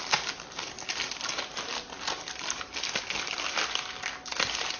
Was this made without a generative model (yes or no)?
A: yes